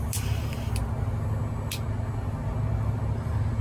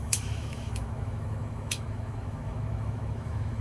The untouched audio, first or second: first